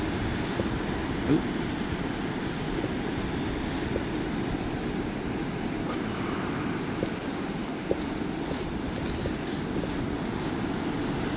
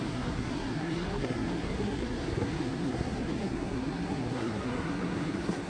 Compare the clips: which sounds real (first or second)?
first